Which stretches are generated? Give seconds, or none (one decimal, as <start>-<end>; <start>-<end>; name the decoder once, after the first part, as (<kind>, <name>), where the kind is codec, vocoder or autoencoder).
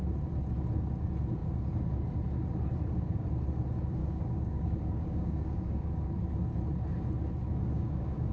4.0-5.9 (codec, DAC); 7.5-8.3